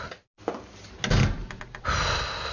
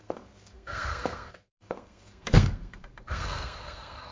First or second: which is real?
first